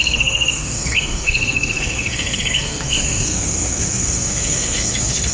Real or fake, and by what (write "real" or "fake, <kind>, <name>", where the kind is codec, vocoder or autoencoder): fake, codec, SNAC